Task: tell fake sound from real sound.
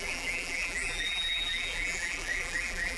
fake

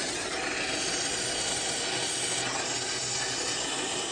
real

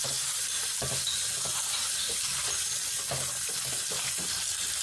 real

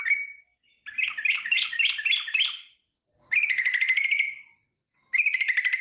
real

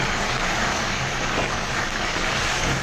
fake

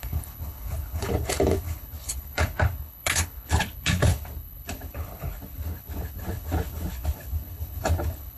fake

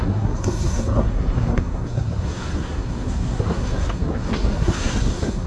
fake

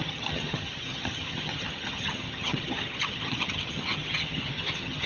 fake